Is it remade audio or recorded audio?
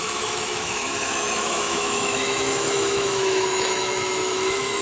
remade